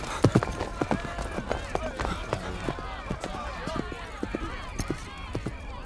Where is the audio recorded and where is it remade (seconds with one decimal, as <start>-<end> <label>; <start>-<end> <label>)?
0.0-0.7 remade; 0.7-4.2 recorded; 4.2-4.7 remade; 4.7-5.5 recorded; 5.5-5.9 remade